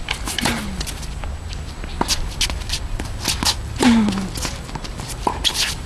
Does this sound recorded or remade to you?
recorded